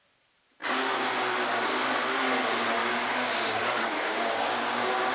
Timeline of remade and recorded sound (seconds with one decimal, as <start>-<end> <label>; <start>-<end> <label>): 0.0-2.8 recorded; 2.8-5.1 remade